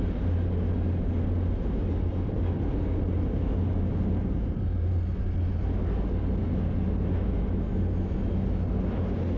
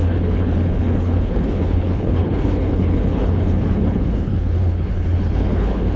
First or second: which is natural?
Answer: first